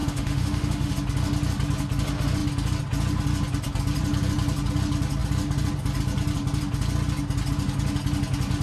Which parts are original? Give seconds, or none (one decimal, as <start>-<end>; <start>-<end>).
0.9-8.6